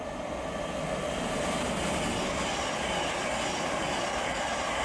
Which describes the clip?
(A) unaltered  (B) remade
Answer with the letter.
A